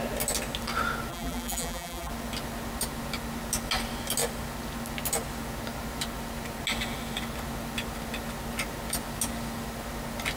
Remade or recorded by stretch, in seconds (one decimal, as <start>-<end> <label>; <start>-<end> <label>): 0.0-1.1 recorded; 1.1-2.1 remade; 2.1-10.4 recorded